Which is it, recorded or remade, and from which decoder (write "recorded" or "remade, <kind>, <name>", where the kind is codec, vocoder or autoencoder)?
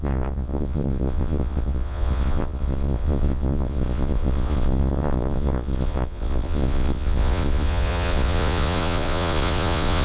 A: remade, vocoder, Vocos